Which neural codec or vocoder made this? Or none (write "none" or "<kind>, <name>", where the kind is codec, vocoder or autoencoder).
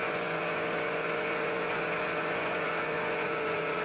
vocoder, Vocos